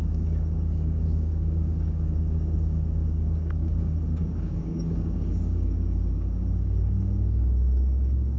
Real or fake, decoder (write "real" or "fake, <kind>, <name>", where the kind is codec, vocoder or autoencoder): fake, codec, DAC